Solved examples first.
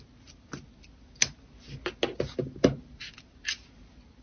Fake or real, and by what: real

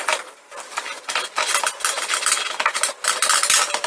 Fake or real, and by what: real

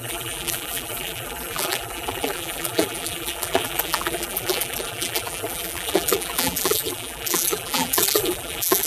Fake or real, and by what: fake, vocoder, BigVGAN v2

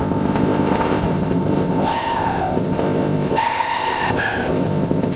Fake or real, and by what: fake, codec, ZipCodec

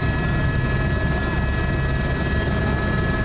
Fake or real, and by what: real